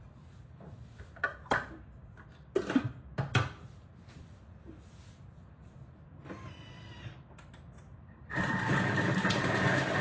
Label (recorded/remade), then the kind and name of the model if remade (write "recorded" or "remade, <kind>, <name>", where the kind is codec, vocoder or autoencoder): remade, vocoder, BigVGAN v2